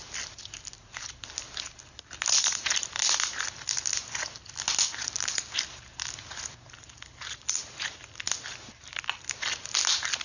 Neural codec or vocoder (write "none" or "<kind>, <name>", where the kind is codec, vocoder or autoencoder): none